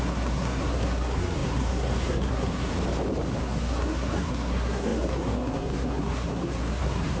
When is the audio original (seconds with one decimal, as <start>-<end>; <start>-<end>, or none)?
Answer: 2.7-3.4